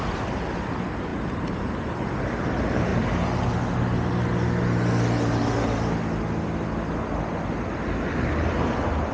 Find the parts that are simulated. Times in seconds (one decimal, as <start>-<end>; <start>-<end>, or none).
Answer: 0.0-2.9; 7.8-9.1